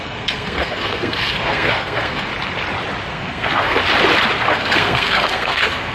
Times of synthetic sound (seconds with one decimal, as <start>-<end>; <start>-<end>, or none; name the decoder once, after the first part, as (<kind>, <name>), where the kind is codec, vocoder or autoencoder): 0.0-2.3 (codec, SNAC); 3.1-3.8; 4.5-5.9